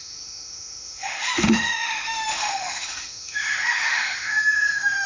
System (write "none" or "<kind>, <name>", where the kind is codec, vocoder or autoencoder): autoencoder, DAC-VAE